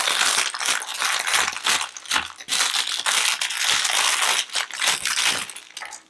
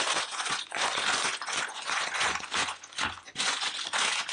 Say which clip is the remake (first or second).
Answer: second